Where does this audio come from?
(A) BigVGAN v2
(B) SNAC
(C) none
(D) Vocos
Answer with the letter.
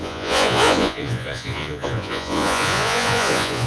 D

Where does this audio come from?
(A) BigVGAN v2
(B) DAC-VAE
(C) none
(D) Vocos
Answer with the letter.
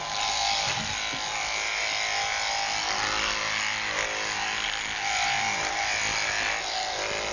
C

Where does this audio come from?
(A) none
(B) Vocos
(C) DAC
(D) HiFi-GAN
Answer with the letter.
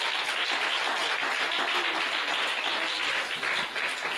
A